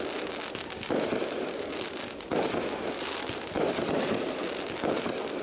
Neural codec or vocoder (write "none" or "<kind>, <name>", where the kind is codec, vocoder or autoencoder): none